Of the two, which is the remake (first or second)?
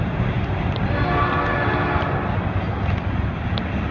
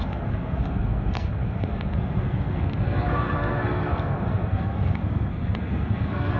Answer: second